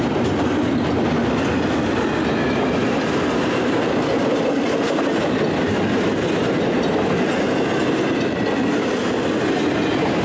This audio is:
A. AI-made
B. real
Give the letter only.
B